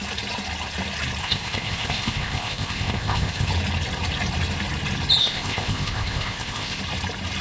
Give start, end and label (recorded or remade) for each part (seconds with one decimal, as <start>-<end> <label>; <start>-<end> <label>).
0.0-1.2 recorded; 1.2-3.5 remade; 3.5-5.2 recorded; 5.2-6.8 remade; 6.8-7.4 recorded